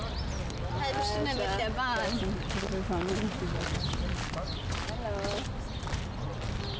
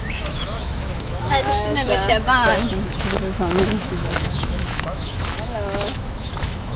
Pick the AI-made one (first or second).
second